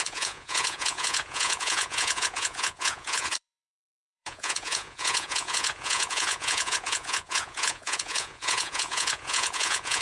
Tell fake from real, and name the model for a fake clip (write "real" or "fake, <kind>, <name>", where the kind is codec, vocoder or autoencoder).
fake, vocoder, Vocos